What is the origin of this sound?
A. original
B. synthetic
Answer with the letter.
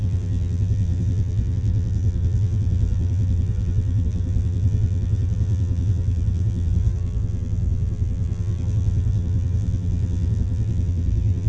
B